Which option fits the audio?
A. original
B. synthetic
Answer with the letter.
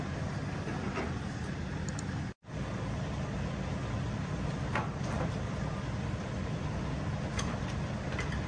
A